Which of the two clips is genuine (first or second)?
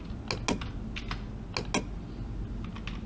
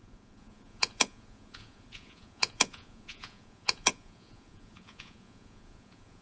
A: first